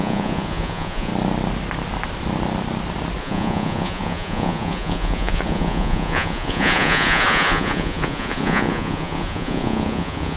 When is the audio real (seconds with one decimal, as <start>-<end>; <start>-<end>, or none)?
1.1-3.2

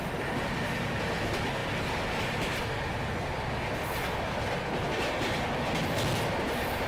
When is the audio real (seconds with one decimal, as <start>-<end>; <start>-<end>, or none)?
0.0-6.9

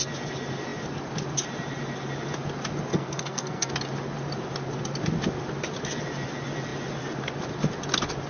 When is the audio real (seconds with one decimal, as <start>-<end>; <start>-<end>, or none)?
0.0-2.9; 3.7-8.3

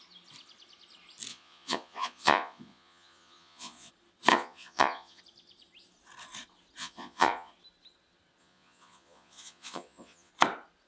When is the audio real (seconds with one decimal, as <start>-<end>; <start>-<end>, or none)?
0.0-1.3; 3.9-4.3; 5.2-6.8; 7.5-8.4; 10.3-10.9